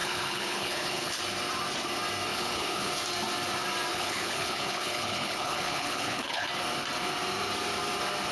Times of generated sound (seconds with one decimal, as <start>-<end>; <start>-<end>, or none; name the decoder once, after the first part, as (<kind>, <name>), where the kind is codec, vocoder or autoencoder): 0.0-1.2 (codec, HILCodec); 2.3-2.9; 3.9-6.5